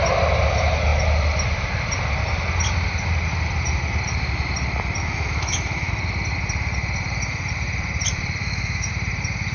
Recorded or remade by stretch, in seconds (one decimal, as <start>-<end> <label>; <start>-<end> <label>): 0.0-5.0 recorded; 5.0-5.9 remade; 5.9-8.4 recorded; 8.4-8.9 remade; 8.9-9.5 recorded